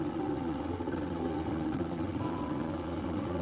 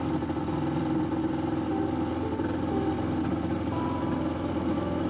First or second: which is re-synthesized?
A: first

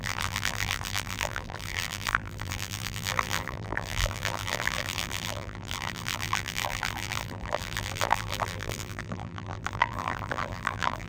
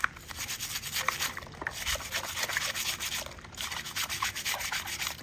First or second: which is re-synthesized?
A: first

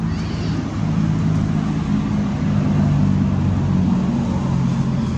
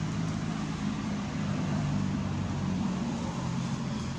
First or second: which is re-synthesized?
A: second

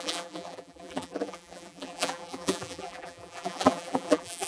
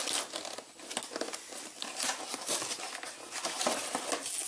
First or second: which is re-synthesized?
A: first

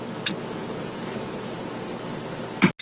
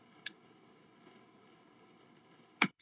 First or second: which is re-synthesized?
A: second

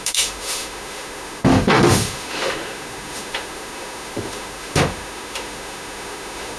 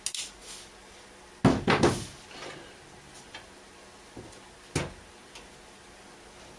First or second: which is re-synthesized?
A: first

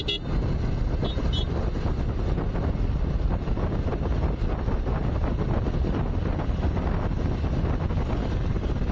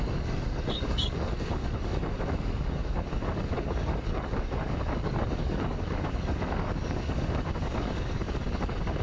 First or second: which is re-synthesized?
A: second